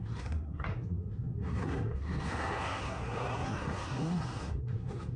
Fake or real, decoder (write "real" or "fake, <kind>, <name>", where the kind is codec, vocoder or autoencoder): fake, codec, SNAC